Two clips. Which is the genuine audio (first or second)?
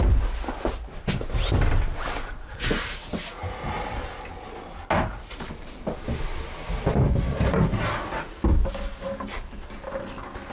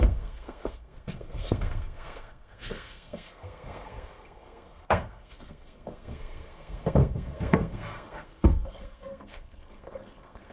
first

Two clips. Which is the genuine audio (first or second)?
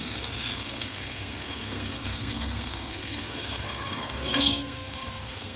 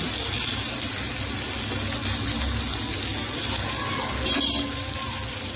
second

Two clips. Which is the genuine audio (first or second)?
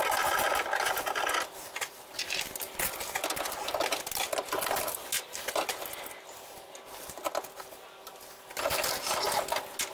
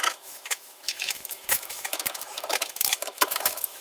first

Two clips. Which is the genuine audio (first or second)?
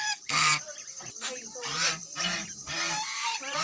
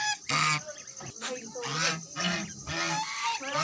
second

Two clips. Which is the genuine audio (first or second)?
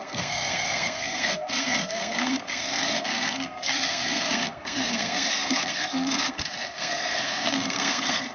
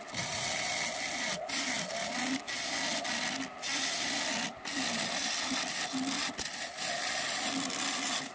second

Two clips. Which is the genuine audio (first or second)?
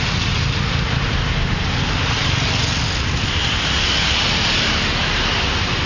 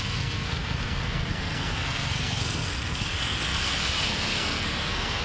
first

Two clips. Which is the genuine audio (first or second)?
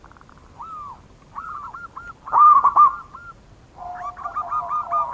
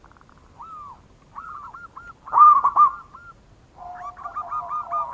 second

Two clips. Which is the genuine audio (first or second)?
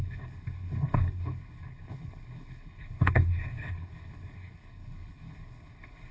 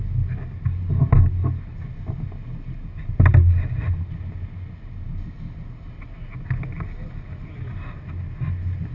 second